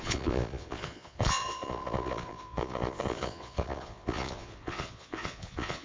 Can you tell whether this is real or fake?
fake